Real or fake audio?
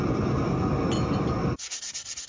real